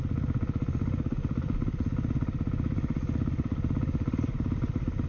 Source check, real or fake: real